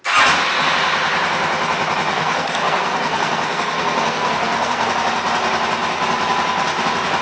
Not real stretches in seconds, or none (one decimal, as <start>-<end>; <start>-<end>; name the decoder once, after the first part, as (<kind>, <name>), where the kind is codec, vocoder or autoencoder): 2.1-4.9 (codec, SNAC)